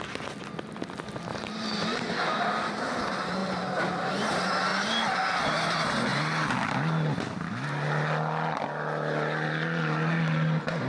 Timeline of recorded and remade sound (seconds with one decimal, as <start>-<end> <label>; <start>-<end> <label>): 0.0-1.3 recorded; 1.3-2.7 remade; 2.7-3.4 recorded; 3.4-4.1 remade; 4.1-4.7 recorded; 4.7-5.2 remade; 5.2-10.9 recorded